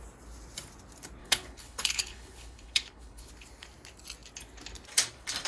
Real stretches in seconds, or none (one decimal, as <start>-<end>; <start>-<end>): 0.0-1.2; 3.3-5.5